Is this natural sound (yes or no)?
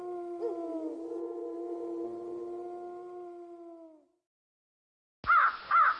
yes